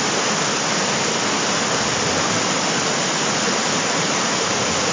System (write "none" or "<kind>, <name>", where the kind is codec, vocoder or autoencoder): none